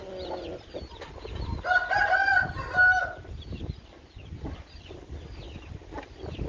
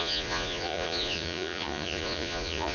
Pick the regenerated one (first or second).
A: second